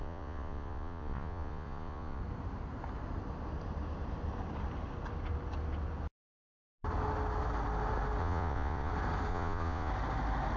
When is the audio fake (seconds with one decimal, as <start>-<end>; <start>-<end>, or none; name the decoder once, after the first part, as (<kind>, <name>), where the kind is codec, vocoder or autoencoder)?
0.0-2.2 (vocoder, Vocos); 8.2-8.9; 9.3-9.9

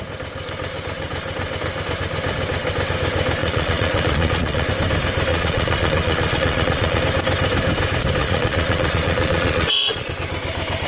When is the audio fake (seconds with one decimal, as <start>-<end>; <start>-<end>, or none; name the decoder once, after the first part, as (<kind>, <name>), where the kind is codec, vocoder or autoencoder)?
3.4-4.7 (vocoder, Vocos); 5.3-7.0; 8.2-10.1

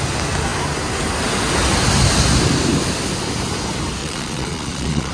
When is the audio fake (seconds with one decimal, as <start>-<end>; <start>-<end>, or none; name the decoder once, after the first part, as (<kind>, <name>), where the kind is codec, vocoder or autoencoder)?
4.0-5.1 (vocoder, Vocos)

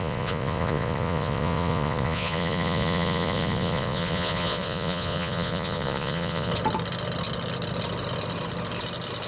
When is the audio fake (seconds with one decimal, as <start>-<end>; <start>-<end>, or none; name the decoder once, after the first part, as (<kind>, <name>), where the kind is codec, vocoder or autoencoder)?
0.0-6.5 (vocoder, Vocos)